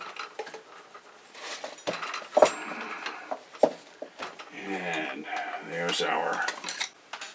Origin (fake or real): real